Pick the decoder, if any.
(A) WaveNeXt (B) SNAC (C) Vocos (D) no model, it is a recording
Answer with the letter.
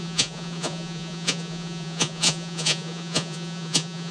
C